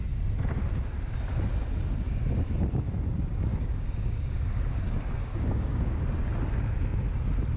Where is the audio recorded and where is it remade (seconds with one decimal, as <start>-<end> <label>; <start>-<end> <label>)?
0.0-3.5 recorded; 3.5-4.8 remade; 4.8-5.3 recorded; 5.3-6.0 remade; 6.0-7.6 recorded